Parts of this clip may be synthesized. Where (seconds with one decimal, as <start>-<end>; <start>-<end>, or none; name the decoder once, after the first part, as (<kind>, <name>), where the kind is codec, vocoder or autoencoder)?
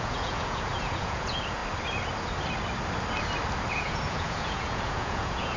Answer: 0.0-1.6 (vocoder, Vocos); 3.7-5.6